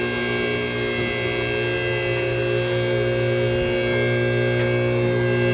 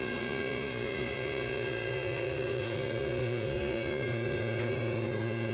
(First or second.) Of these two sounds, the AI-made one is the second